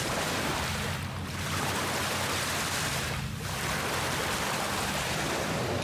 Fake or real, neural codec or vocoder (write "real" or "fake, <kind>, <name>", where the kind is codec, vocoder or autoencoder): real